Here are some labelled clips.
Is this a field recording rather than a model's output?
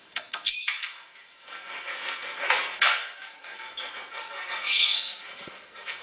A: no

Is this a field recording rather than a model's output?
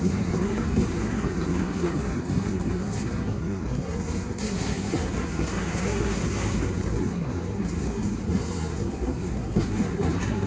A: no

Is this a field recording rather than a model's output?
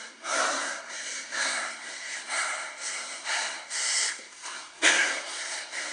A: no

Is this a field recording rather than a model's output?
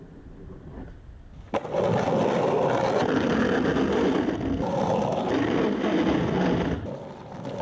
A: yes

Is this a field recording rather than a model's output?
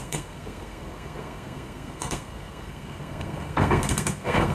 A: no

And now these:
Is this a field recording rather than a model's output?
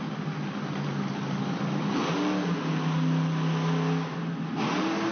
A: yes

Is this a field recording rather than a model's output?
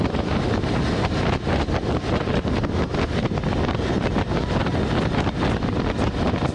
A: yes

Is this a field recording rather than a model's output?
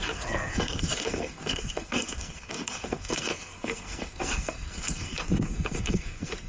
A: no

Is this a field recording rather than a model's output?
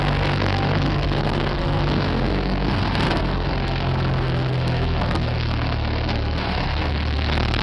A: no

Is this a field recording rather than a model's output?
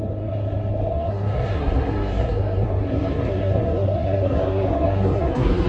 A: no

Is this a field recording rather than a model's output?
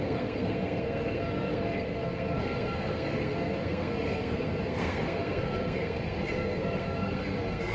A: no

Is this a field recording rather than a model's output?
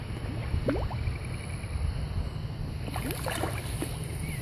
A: yes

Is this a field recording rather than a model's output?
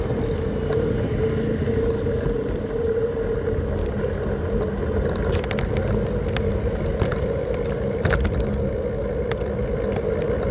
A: yes